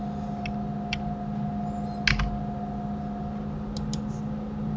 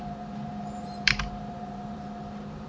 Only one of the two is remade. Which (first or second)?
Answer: second